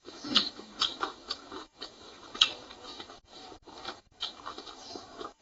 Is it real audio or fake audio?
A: fake